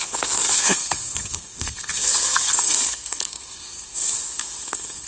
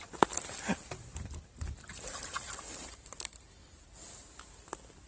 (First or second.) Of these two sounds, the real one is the second